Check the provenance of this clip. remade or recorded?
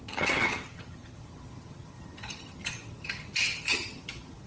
remade